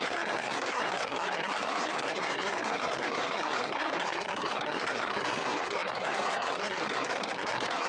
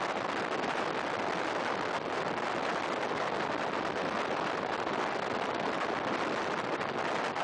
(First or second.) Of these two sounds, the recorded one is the second